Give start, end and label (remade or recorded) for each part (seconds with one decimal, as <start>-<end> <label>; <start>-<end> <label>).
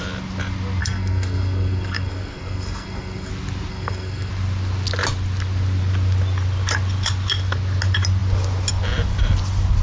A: 0.0-0.8 recorded; 0.8-3.3 remade; 3.3-3.7 recorded; 3.7-4.3 remade; 4.3-9.8 recorded